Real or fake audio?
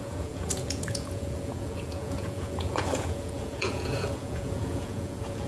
fake